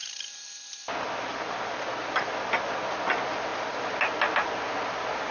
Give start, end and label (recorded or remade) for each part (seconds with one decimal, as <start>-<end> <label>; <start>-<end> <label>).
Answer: 0.0-5.3 recorded